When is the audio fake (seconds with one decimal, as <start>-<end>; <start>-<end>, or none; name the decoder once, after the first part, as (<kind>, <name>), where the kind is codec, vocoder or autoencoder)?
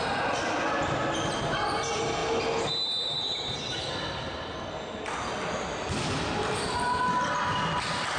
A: none